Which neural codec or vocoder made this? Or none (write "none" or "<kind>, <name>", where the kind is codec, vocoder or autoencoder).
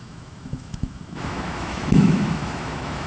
autoencoder, DAC-VAE